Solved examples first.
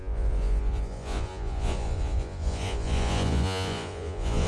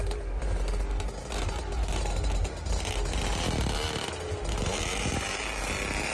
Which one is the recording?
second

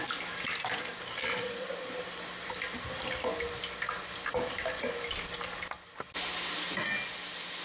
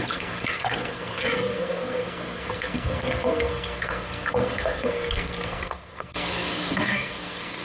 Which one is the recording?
first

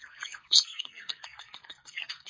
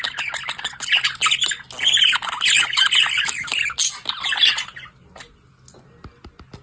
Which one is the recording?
second